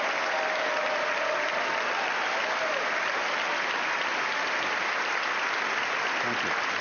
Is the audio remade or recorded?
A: recorded